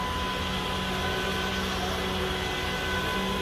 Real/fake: real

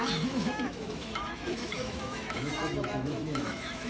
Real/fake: fake